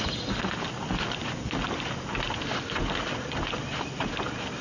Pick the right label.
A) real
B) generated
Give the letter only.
A